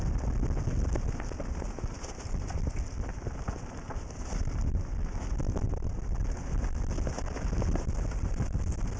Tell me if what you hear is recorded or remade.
recorded